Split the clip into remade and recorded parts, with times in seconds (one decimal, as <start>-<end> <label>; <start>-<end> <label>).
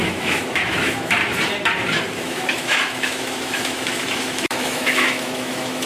0.0-1.2 remade; 1.2-2.2 recorded; 2.2-5.9 remade